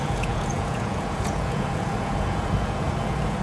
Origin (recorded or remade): remade